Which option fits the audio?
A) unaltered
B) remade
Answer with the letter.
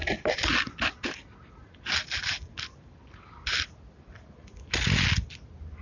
A